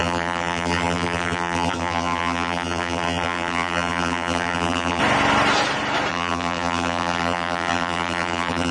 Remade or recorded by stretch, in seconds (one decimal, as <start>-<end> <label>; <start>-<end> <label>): 0.0-5.0 remade; 5.0-6.1 recorded; 6.1-8.7 remade